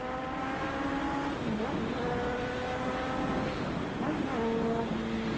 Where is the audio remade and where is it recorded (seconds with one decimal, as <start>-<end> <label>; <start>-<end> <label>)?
0.0-5.4 recorded